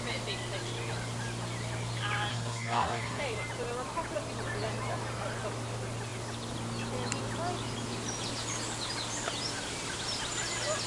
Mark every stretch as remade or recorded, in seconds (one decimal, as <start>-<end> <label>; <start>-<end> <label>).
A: 0.0-2.3 recorded; 2.3-3.2 remade; 3.2-10.9 recorded